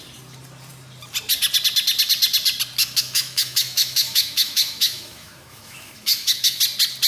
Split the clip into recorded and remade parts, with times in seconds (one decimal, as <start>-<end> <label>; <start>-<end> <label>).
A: 0.0-2.8 recorded; 2.8-6.6 remade; 6.6-7.1 recorded